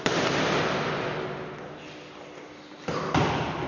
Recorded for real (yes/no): yes